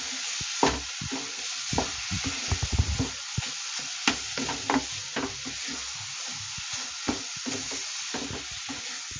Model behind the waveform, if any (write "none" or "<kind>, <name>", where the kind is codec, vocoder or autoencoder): none